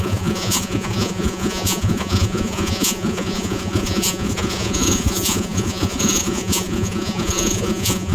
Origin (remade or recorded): remade